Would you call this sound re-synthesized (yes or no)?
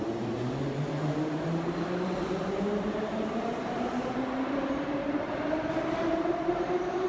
yes